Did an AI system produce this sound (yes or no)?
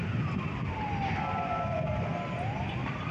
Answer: no